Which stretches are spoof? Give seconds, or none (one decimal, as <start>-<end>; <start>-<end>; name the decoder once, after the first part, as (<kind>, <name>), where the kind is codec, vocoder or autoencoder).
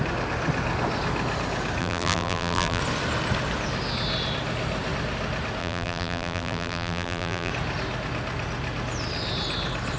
1.8-2.8 (vocoder, BigVGAN v2); 5.6-7.5